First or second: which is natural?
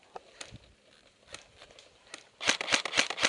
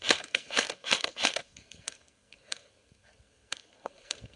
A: first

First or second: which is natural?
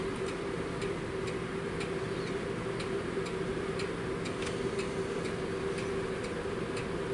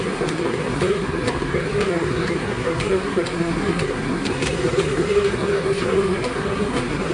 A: first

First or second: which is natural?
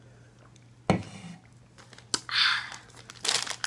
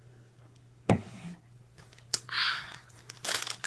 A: first